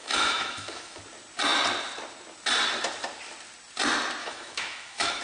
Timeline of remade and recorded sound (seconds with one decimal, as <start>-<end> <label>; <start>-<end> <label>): 0.0-1.0 remade; 1.0-4.2 recorded; 4.2-5.2 remade